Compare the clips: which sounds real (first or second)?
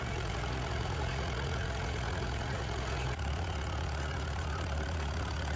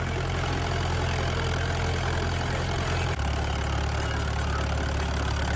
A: second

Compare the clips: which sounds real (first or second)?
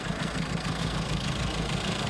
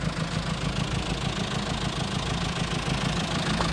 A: second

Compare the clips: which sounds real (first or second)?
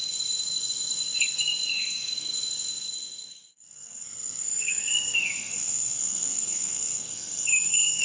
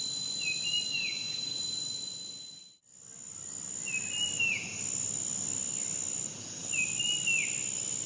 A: second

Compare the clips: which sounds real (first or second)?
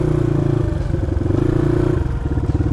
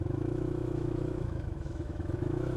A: first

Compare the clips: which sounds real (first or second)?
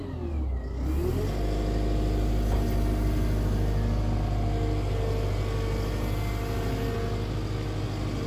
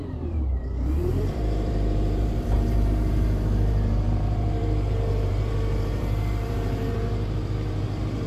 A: first